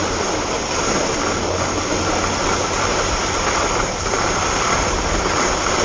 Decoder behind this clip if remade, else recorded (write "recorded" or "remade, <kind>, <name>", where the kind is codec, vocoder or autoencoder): recorded